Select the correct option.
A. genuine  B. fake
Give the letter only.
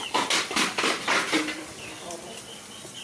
A